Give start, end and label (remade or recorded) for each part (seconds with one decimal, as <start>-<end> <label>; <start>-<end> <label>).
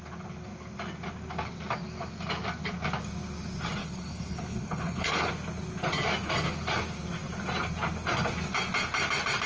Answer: 0.0-3.8 recorded; 3.8-5.3 remade; 5.3-9.5 recorded